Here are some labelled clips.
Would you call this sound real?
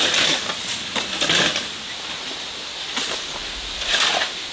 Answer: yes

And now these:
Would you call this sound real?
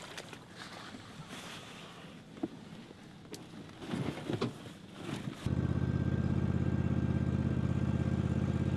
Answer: yes